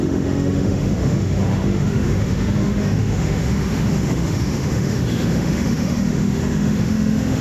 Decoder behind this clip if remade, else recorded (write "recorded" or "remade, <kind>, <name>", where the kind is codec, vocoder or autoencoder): remade, autoencoder, DAC-VAE